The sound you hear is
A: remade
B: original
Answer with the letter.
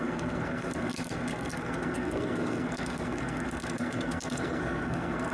A